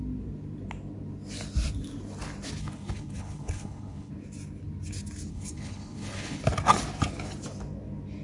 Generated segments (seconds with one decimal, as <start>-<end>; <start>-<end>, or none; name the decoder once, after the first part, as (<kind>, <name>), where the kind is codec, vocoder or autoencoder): 2.6-4.1 (codec, HILCodec); 5.3-6.4